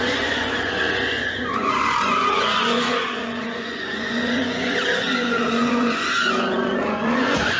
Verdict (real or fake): fake